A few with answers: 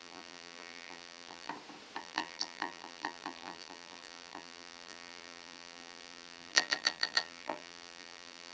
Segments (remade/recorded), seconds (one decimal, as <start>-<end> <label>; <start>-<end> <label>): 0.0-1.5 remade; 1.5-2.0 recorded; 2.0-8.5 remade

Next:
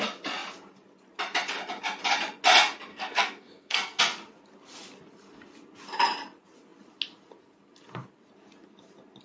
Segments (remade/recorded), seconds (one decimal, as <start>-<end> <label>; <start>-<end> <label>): 0.0-2.9 recorded; 2.9-4.0 remade; 4.0-9.2 recorded

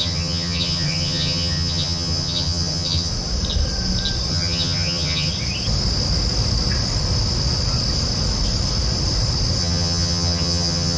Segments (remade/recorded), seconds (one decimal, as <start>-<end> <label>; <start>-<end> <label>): 0.0-3.1 remade; 3.1-4.3 recorded; 4.3-5.3 remade; 5.3-9.6 recorded; 9.6-11.0 remade